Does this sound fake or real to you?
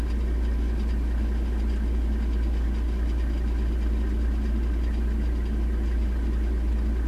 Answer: real